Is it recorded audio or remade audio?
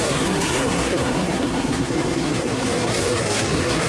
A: remade